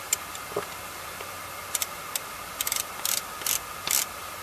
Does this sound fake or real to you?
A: fake